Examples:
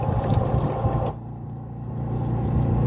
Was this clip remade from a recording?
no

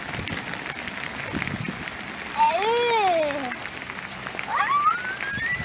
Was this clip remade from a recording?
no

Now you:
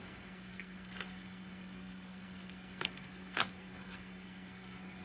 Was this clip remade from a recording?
yes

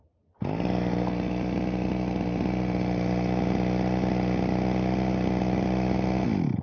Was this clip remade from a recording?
no